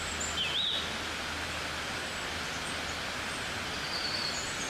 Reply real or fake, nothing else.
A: real